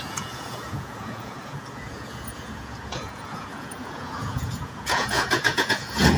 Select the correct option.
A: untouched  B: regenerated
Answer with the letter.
B